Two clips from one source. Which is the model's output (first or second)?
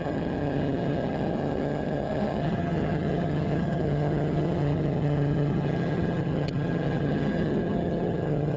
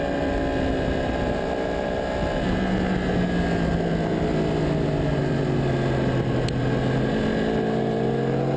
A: first